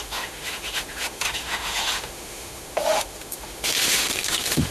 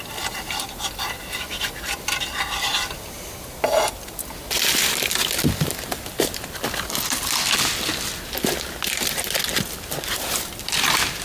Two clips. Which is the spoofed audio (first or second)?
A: first